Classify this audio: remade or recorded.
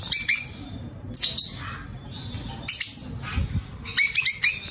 recorded